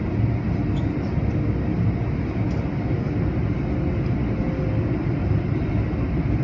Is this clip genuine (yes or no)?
yes